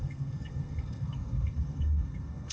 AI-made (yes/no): yes